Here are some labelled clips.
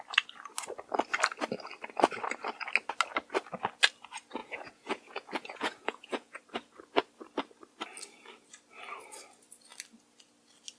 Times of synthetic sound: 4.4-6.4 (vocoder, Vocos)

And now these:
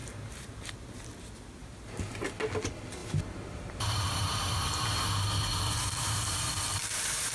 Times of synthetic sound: 0.0-0.7 (vocoder, BigVGAN v2); 1.6-2.2; 3.0-7.3

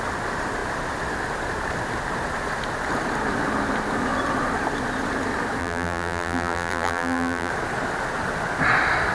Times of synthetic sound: 5.6-7.5 (vocoder, BigVGAN v2)

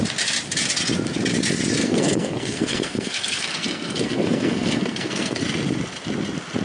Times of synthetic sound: 1.8-5.4 (codec, SNAC)

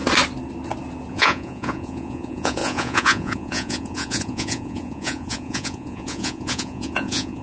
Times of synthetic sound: 1.1-7.4 (vocoder, Vocos)

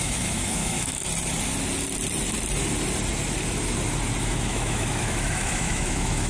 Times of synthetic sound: 0.0-1.0 (autoencoder, DAC-VAE); 4.2-6.3

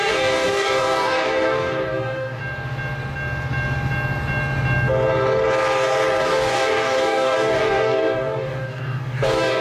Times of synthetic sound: 0.0-2.4 (codec, DAC); 6.2-9.6